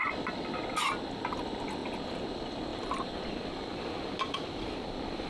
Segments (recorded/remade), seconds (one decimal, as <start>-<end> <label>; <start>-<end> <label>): 0.0-2.7 recorded; 2.7-3.3 remade; 3.3-5.3 recorded